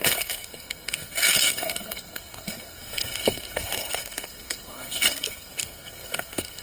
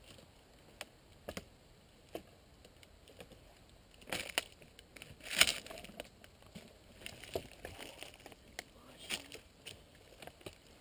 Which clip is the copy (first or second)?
first